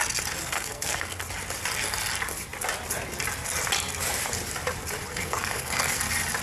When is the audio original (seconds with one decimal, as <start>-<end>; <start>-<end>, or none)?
0.0-0.4; 1.2-5.1; 6.0-6.4